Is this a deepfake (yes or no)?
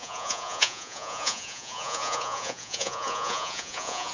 yes